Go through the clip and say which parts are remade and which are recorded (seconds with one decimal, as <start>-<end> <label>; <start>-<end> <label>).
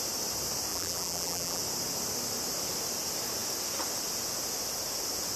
0.0-0.7 recorded; 0.7-1.6 remade; 1.6-5.4 recorded